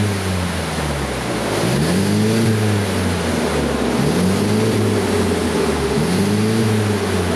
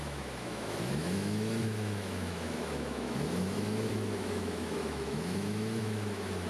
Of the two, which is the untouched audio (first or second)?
first